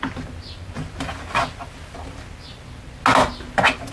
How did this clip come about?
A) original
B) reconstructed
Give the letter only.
A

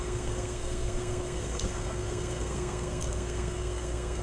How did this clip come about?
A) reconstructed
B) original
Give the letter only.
A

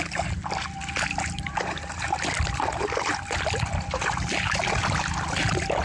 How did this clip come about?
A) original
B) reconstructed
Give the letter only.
A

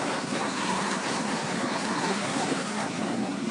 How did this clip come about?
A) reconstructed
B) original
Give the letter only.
A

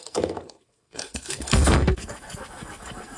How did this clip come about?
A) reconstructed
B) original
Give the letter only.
A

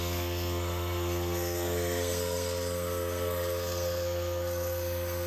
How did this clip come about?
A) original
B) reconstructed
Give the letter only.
B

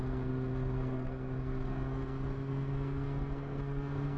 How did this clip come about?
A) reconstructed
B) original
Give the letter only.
A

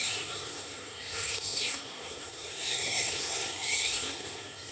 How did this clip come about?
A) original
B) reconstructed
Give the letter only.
B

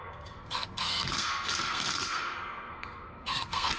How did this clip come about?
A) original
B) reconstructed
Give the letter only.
B